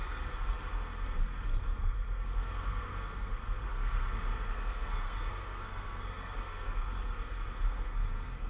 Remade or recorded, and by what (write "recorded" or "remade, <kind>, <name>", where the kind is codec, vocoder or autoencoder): remade, codec, SNAC